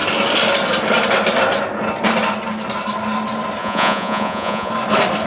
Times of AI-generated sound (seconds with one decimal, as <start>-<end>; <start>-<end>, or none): 3.6-4.7